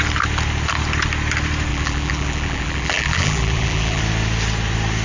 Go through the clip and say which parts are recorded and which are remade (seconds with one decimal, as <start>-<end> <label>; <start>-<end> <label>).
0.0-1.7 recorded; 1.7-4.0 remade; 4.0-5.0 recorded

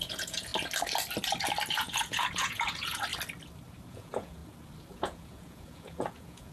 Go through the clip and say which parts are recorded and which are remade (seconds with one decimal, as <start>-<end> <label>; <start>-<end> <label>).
0.0-0.5 remade; 0.5-1.7 recorded; 1.7-3.1 remade; 3.1-3.9 recorded; 3.9-4.4 remade; 4.4-4.9 recorded; 4.9-6.5 remade

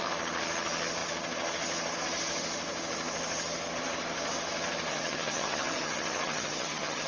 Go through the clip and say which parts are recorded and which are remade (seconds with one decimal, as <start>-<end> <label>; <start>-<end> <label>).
0.0-4.9 recorded; 4.9-7.1 remade

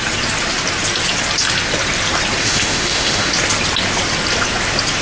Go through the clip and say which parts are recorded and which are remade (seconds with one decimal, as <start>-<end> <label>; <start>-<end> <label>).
0.0-2.4 recorded; 2.4-3.3 remade; 3.3-5.0 recorded

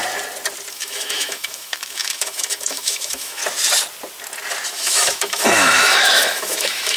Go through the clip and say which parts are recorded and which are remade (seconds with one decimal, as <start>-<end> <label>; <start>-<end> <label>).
0.0-0.7 recorded; 0.7-3.4 remade; 3.4-4.7 recorded; 4.7-7.0 remade